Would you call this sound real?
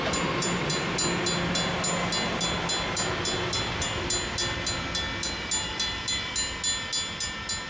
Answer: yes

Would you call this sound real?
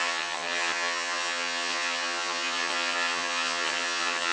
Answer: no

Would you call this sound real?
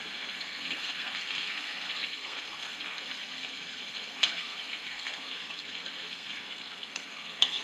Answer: no